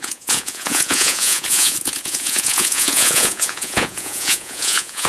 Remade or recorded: remade